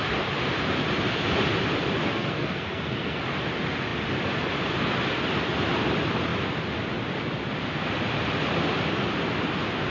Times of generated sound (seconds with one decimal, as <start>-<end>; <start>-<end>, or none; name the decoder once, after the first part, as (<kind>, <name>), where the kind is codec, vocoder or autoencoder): 2.0-3.2 (codec, SNAC)